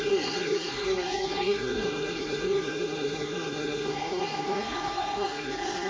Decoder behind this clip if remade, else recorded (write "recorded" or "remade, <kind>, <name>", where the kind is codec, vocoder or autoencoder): remade, codec, SNAC